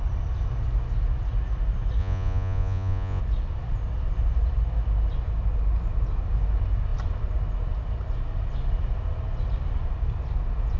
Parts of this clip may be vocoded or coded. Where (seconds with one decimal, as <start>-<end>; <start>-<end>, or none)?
2.0-3.2